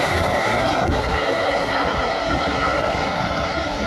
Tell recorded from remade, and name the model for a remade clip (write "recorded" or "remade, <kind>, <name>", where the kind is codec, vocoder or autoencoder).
remade, codec, SNAC